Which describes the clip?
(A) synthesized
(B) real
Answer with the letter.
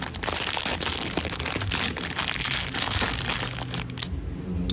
B